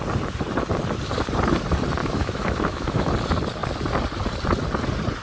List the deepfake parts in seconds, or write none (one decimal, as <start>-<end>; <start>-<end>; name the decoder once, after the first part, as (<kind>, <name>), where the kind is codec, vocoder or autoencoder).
2.0-3.1 (autoencoder, DAC-VAE)